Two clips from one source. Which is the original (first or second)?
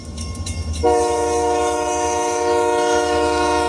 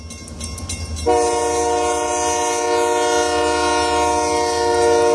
second